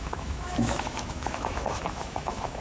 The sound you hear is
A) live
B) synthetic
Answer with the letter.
B